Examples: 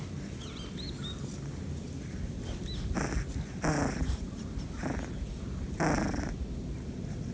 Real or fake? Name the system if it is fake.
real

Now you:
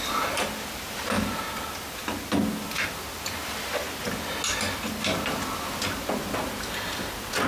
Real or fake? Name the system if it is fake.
real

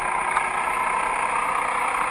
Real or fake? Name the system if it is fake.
real